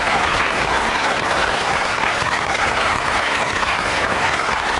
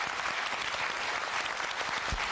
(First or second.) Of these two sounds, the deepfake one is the first